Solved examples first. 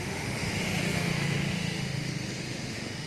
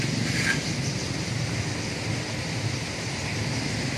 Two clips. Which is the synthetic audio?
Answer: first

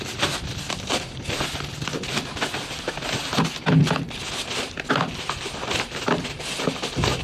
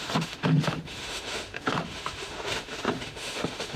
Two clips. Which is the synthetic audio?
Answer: second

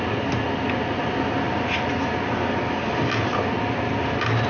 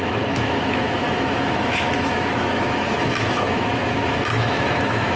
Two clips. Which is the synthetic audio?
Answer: second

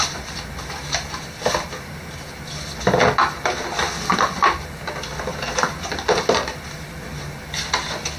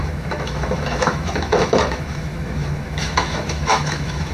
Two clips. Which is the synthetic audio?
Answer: second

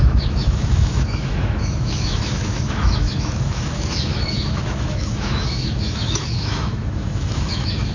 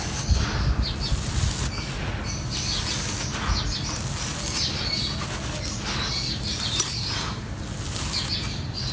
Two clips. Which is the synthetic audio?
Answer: first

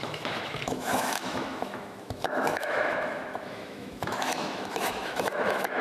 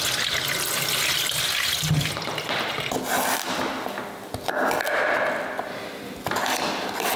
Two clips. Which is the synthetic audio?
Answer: first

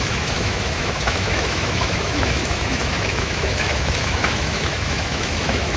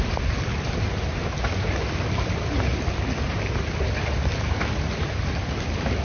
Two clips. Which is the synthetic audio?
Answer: first